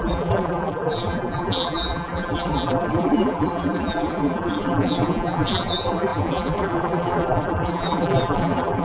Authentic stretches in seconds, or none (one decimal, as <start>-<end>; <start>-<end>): none